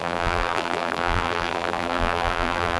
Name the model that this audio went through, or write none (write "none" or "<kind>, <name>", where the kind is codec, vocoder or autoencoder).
vocoder, BigVGAN v2